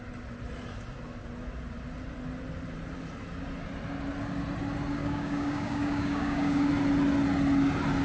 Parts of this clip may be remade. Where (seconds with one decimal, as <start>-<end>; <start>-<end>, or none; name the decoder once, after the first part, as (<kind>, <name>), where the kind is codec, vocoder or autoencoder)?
5.0-6.7 (codec, DAC)